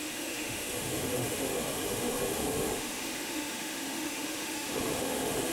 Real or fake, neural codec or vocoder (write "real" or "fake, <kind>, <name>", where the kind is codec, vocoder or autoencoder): fake, autoencoder, DAC-VAE